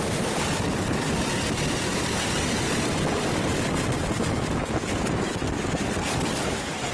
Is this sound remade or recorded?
recorded